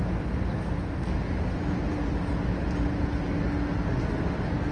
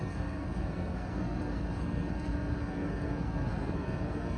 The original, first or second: first